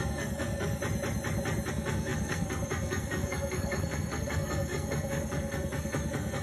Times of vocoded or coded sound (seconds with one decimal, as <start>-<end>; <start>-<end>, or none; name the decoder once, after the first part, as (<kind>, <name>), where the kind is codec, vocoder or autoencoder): 0.0-0.8 (codec, SNAC); 1.7-6.4